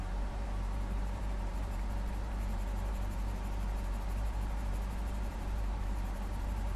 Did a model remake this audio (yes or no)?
yes